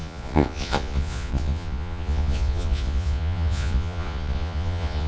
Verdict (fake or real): fake